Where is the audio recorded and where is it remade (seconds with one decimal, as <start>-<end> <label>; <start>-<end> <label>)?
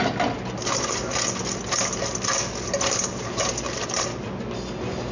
0.0-5.1 recorded